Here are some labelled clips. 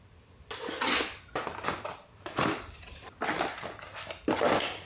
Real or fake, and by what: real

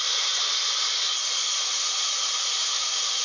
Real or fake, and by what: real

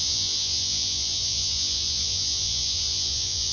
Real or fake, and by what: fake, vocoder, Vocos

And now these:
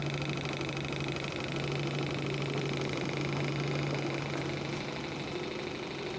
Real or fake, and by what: real